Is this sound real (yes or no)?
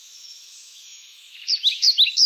no